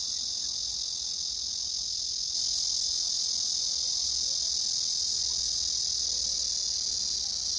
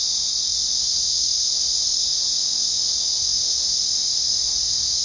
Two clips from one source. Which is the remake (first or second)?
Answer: second